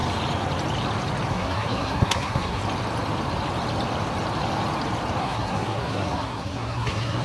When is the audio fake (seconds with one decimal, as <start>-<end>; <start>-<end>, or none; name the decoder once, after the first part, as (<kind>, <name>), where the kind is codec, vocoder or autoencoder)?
1.3-2.6 (codec, SNAC); 5.2-7.2